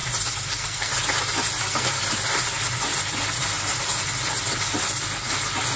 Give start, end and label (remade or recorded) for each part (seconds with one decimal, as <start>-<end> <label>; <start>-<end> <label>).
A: 0.0-0.5 recorded; 0.5-0.9 remade; 0.9-1.6 recorded; 1.6-2.0 remade; 2.0-5.8 recorded